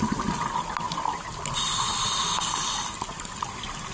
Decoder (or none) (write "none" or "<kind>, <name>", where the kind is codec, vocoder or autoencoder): none